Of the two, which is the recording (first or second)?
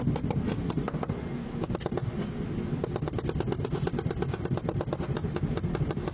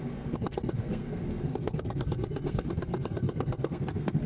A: first